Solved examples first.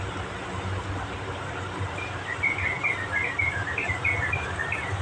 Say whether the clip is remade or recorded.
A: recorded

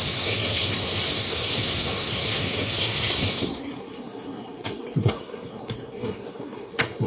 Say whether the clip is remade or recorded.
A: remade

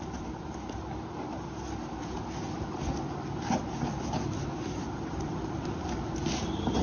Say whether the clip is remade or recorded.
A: recorded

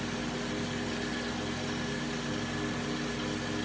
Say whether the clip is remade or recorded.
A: recorded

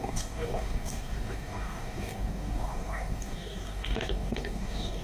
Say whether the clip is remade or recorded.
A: remade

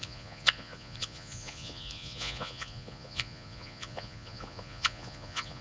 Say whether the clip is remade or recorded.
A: remade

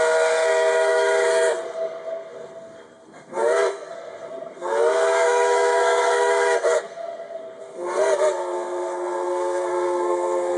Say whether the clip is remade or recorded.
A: remade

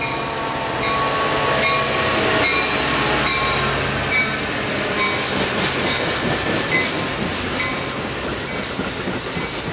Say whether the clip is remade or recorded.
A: recorded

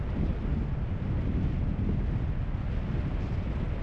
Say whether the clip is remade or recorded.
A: recorded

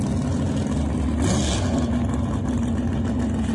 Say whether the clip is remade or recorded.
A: recorded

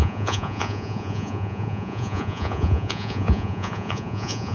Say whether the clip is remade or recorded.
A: remade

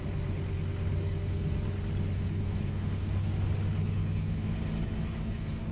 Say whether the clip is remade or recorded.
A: recorded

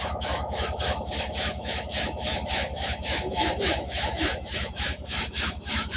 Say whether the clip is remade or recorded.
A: remade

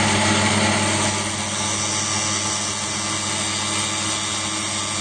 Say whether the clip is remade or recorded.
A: recorded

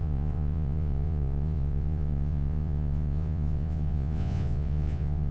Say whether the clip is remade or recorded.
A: remade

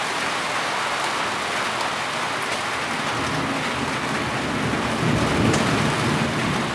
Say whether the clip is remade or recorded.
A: recorded